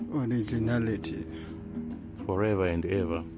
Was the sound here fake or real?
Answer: real